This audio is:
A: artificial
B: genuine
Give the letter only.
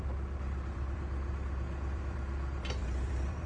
A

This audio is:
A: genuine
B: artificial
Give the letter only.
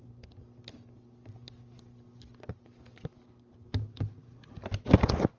A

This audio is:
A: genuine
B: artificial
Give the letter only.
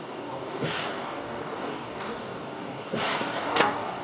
B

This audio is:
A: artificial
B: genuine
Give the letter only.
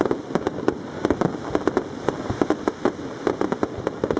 B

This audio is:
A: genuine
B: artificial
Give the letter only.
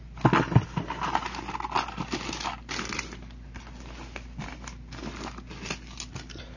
A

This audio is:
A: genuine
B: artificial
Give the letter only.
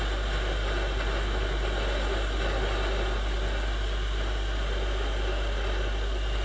A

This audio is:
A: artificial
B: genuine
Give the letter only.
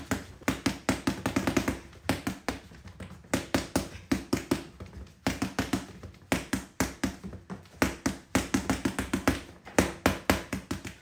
B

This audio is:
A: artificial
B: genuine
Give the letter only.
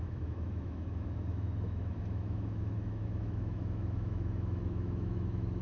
A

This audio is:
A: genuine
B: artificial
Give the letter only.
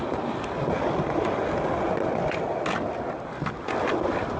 A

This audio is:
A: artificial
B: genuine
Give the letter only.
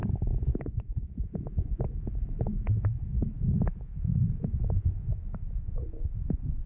A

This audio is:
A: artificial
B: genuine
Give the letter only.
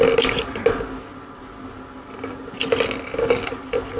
B